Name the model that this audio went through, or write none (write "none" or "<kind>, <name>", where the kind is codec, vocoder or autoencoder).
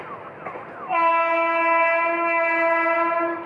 none